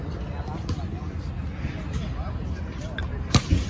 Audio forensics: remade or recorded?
recorded